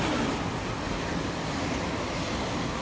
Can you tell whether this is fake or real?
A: real